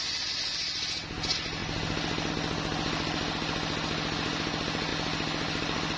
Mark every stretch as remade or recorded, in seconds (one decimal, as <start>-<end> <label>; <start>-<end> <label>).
0.0-6.0 recorded